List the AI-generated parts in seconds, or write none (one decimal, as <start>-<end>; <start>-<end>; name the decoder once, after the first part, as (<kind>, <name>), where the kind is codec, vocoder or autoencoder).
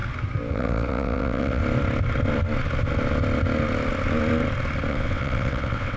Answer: 0.5-1.6 (vocoder, WaveNeXt); 4.9-6.0